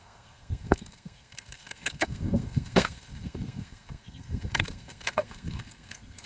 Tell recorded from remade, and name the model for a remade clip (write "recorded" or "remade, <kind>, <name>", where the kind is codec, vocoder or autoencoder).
remade, codec, SNAC